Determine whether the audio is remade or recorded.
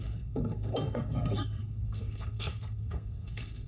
remade